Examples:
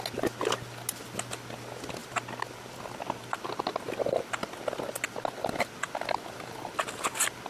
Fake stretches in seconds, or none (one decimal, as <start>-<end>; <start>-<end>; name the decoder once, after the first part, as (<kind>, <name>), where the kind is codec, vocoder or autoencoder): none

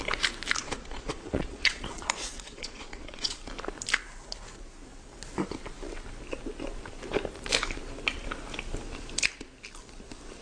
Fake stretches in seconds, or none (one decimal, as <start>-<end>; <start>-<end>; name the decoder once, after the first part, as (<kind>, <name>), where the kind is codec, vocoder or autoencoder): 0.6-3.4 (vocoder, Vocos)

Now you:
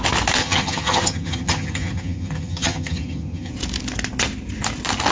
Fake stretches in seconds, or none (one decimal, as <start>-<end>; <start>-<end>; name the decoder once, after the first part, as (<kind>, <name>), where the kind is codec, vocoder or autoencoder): 0.4-3.5 (vocoder, HiFi-GAN)

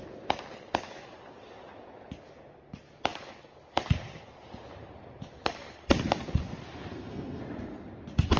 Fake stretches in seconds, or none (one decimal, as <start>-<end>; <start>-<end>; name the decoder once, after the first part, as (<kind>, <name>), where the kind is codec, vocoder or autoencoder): 6.9-7.4 (codec, SNAC)

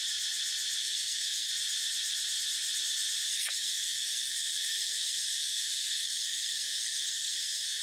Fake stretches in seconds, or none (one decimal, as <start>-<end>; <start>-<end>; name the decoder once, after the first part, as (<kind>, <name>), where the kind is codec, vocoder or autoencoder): 0.8-1.5 (codec, SNAC); 3.3-7.8